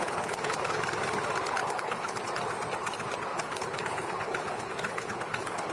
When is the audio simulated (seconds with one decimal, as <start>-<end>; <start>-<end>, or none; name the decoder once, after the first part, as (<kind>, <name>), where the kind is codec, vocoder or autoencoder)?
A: 0.0-0.8 (codec, HILCodec); 1.6-2.2; 3.3-5.7